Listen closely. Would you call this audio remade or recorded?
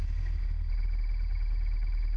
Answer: recorded